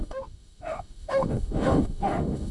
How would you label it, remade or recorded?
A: remade